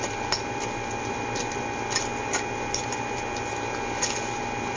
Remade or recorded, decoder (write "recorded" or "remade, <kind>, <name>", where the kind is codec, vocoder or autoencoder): recorded